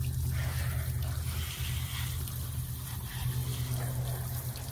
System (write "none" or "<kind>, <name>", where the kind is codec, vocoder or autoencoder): none